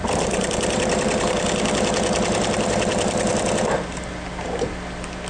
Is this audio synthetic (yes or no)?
no